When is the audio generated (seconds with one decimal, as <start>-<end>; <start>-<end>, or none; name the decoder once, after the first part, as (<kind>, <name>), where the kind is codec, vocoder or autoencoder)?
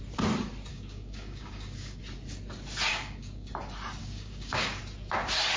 0.7-2.0 (codec, DAC); 2.9-3.5; 4.0-4.8